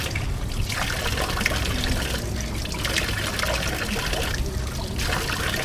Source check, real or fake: real